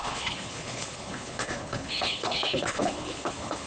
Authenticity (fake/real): fake